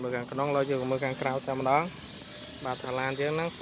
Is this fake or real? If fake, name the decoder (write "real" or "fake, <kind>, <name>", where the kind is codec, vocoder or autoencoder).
real